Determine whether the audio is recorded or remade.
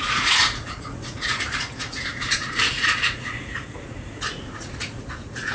remade